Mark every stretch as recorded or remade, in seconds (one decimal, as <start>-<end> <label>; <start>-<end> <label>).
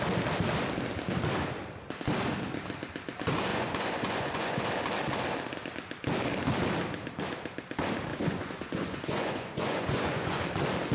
0.0-3.5 recorded; 3.5-4.6 remade; 4.6-8.1 recorded; 8.1-10.4 remade; 10.4-10.9 recorded